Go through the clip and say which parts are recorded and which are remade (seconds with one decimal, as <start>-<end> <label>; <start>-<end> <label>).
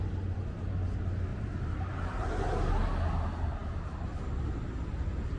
0.0-1.3 recorded; 1.3-2.3 remade; 2.3-5.4 recorded